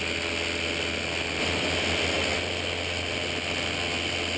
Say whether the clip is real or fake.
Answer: real